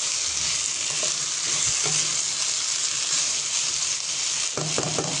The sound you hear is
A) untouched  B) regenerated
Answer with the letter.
A